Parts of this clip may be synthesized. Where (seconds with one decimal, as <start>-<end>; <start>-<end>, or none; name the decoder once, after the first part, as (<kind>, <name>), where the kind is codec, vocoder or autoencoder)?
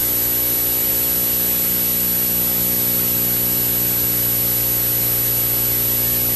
none